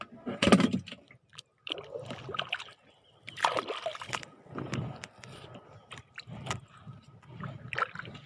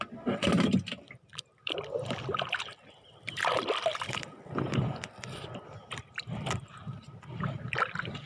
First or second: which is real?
first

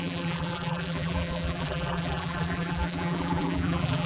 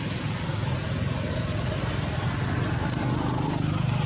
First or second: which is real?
second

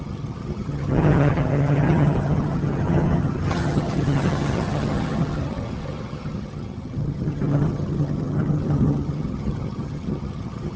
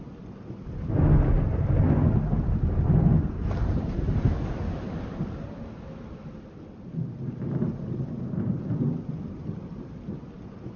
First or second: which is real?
second